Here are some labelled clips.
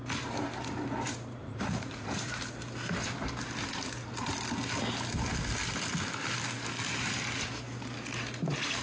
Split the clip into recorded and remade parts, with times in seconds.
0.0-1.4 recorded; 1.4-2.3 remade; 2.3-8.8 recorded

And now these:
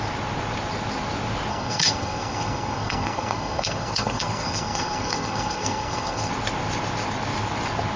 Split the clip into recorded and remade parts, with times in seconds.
0.0-1.5 recorded; 1.5-6.3 remade; 6.3-8.0 recorded

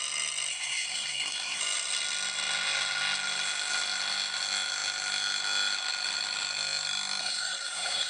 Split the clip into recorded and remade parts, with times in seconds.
0.0-0.5 recorded; 0.5-1.6 remade; 1.6-7.2 recorded; 7.2-8.1 remade

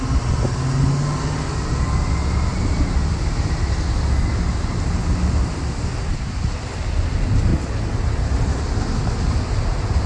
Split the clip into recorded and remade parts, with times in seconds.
0.0-10.1 recorded